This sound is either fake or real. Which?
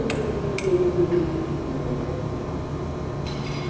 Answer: real